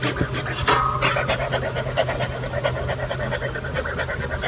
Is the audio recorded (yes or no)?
yes